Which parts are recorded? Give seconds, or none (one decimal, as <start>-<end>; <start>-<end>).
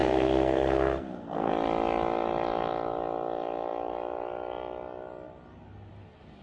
1.5-6.4